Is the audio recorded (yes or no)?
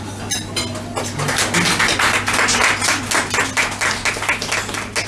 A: yes